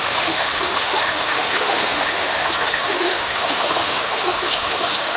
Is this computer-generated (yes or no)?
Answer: yes